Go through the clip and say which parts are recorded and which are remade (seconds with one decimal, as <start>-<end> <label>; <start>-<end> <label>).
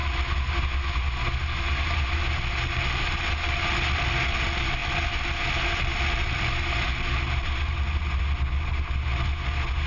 0.0-9.9 recorded